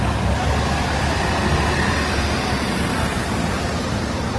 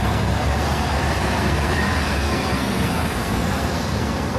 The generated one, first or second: second